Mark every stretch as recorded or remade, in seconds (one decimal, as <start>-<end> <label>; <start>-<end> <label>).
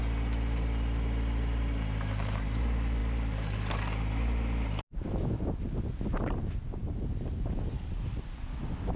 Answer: 0.0-9.0 recorded